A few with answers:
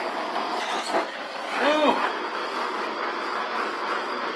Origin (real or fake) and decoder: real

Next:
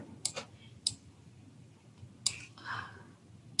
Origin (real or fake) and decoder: real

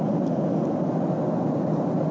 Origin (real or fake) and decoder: real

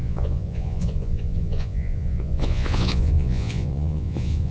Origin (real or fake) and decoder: fake, vocoder, Vocos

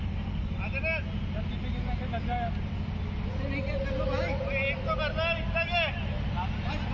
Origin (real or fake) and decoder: real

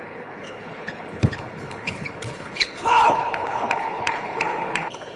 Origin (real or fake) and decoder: fake, codec, HILCodec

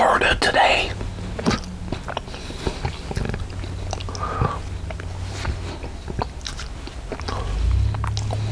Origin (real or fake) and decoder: real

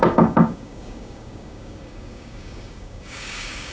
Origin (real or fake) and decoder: fake, codec, DAC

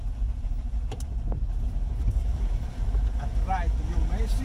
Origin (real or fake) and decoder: fake, vocoder, BigVGAN v2